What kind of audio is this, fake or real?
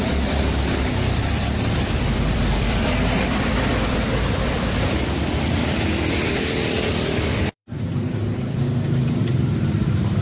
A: fake